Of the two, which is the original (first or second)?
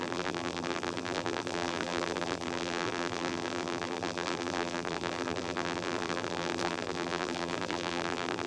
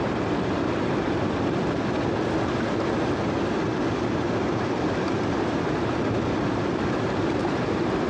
second